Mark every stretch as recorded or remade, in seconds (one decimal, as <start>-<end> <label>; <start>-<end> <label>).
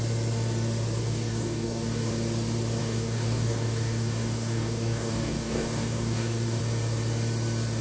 0.0-1.0 recorded; 1.0-2.1 remade; 2.1-2.8 recorded; 2.8-6.6 remade; 6.6-7.8 recorded